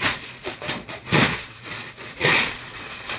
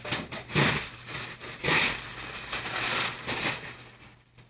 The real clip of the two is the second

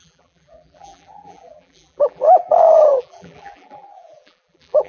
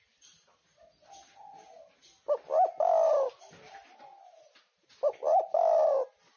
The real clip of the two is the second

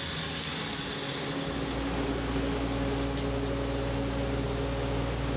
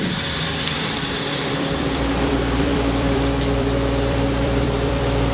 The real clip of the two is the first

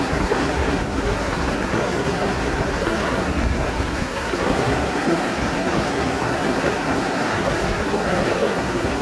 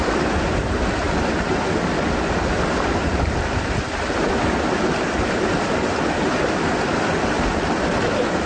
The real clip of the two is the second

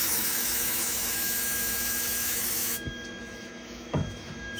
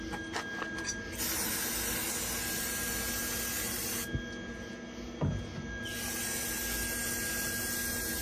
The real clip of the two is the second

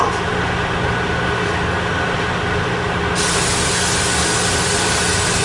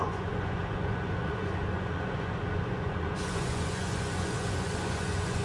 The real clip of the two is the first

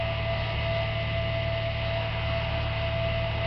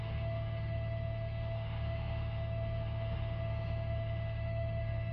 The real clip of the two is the first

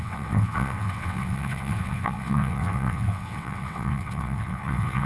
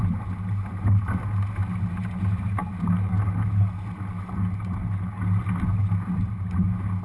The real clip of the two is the second